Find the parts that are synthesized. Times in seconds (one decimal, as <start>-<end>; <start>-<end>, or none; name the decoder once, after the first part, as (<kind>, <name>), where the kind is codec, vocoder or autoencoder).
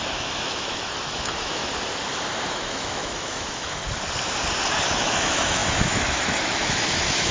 0.0-1.6 (autoencoder, DAC-VAE); 2.5-3.8; 4.9-7.3